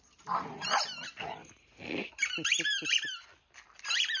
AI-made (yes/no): no